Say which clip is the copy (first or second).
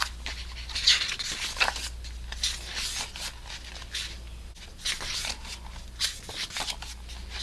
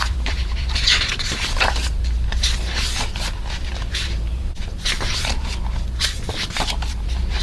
second